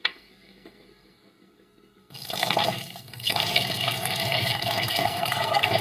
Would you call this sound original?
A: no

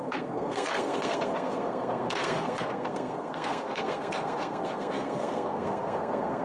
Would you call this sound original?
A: no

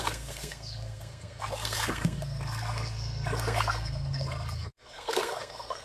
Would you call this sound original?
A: no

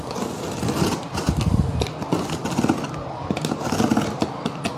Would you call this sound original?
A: yes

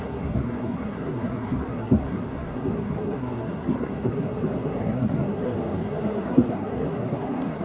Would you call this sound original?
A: no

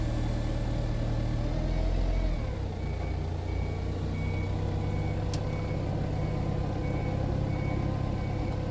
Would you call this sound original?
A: yes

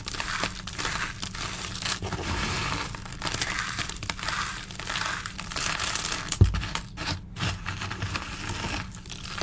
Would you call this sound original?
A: yes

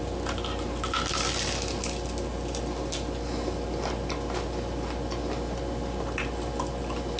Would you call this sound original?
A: yes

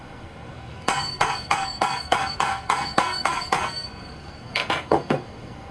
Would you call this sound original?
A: no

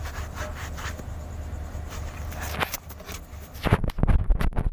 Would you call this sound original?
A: yes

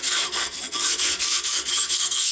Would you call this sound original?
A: no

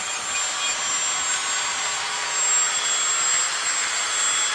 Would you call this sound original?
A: yes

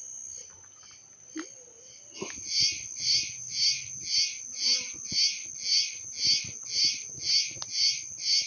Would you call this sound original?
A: yes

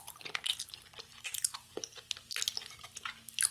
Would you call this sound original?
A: yes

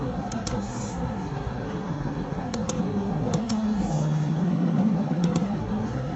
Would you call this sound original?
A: no